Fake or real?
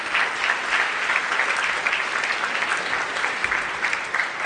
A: real